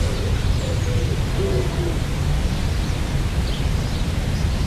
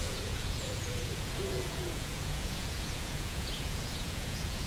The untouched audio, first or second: first